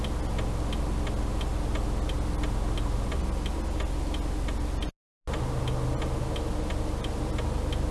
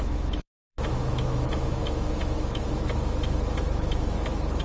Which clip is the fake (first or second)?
second